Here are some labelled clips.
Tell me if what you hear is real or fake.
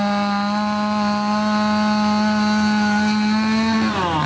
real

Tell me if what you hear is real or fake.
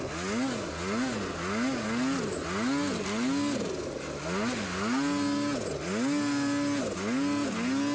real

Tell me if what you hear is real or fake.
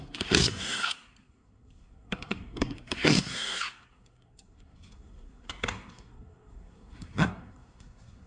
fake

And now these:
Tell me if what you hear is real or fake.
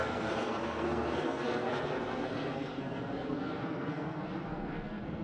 fake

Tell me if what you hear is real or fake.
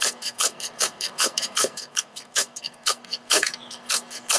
fake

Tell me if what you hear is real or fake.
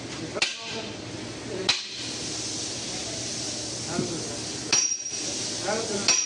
real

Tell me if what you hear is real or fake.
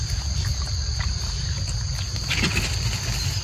real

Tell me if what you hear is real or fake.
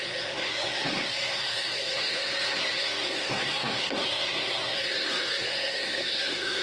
fake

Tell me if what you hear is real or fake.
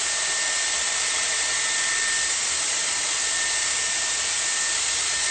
real